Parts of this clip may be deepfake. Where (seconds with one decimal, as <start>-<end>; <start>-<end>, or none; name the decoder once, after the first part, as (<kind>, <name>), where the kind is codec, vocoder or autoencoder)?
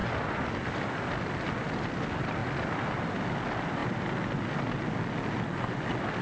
0.0-1.3 (vocoder, BigVGAN v2); 2.4-3.4